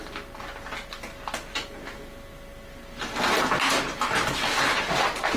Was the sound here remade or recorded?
recorded